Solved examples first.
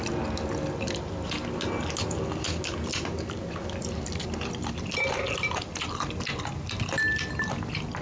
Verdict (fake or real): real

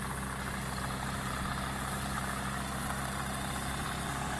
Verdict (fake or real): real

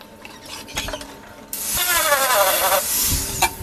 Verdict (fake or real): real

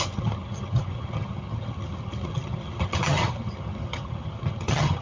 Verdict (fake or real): fake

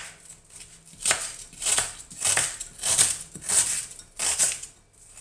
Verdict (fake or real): real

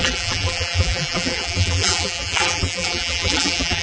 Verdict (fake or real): fake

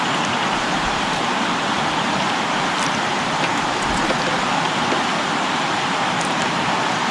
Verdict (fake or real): real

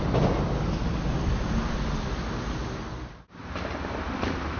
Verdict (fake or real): real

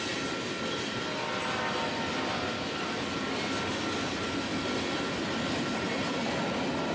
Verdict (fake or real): real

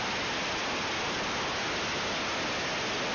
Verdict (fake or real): real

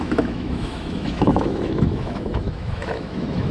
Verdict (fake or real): fake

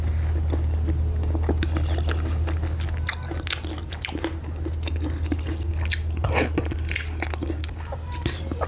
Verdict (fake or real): real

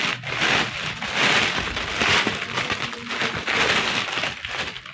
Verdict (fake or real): real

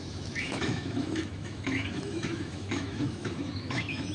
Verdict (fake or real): fake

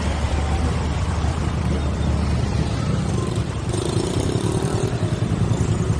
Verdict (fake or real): fake